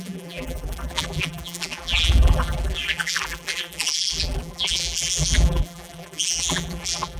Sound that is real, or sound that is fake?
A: fake